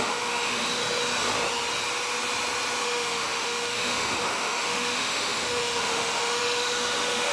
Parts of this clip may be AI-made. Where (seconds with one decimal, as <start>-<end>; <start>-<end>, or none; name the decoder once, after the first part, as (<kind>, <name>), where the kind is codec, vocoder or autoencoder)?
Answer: 0.0-0.8 (autoencoder, DAC-VAE); 2.8-7.3

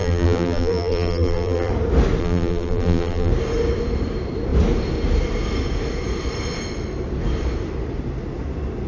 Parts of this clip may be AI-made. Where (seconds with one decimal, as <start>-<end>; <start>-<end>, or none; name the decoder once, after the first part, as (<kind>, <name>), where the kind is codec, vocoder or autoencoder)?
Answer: 0.0-1.7 (vocoder, BigVGAN v2); 2.2-3.3